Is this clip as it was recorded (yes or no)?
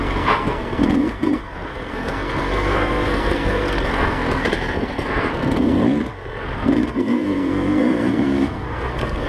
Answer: no